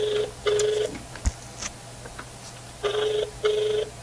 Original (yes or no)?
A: yes